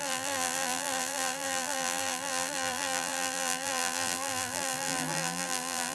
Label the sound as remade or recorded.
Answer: remade